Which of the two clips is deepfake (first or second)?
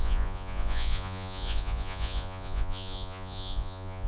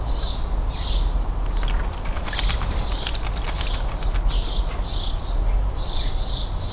first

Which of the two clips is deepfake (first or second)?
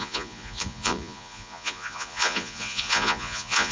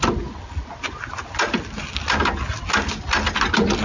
first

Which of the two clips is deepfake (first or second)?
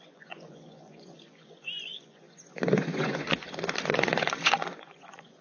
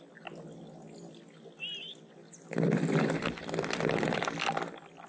first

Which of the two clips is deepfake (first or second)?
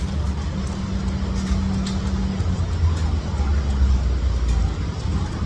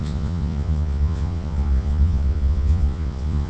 second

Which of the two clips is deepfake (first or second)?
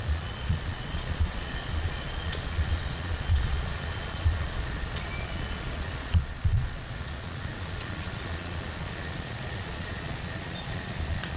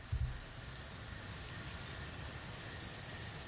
first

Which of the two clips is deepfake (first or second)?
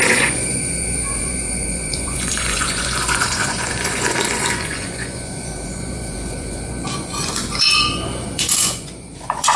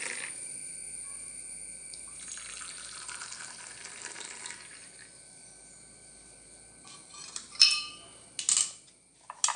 first